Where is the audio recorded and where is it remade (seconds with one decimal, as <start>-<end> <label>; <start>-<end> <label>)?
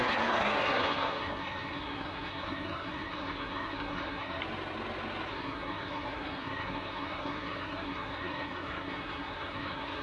0.0-4.4 remade; 4.4-5.3 recorded; 5.3-10.0 remade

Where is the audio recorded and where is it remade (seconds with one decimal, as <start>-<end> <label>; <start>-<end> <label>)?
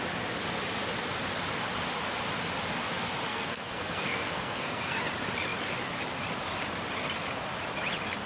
0.0-3.3 recorded; 3.3-5.0 remade; 5.0-8.3 recorded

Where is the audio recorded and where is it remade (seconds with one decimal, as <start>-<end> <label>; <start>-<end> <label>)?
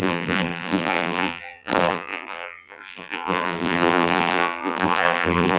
0.0-5.6 remade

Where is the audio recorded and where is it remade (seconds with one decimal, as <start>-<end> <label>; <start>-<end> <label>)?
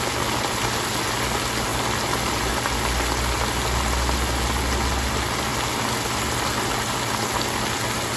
0.0-8.2 recorded